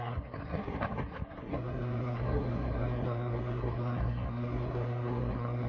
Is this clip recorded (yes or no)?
no